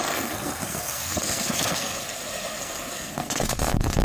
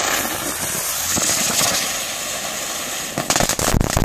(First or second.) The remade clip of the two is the first